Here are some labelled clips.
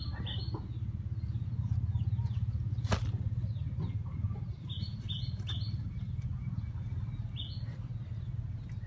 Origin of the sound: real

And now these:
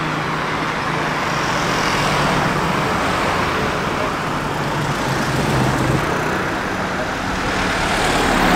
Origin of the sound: real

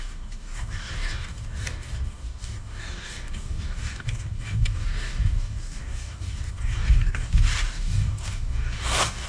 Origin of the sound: fake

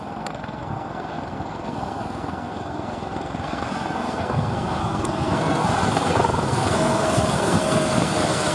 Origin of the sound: fake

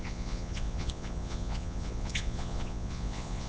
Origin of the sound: fake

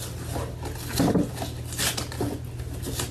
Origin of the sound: real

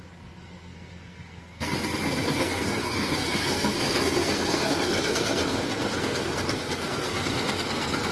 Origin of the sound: fake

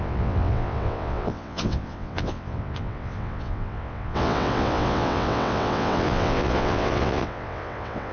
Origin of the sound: fake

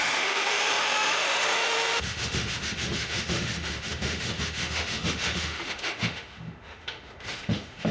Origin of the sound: fake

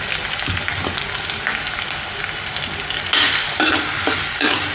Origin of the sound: real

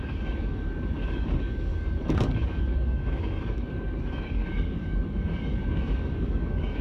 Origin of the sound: fake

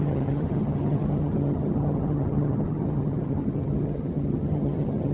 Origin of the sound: fake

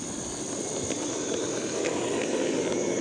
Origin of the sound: real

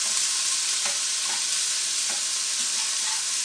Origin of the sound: fake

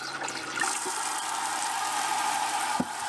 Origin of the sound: fake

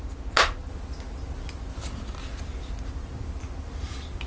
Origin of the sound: real